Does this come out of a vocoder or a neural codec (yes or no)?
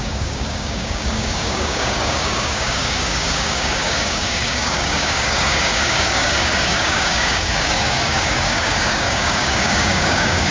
yes